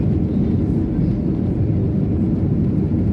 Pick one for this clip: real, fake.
real